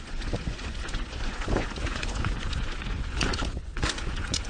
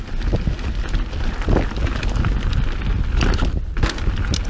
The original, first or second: second